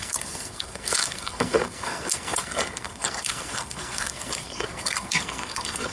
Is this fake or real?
fake